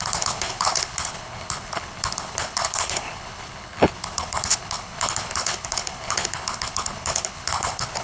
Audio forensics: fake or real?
fake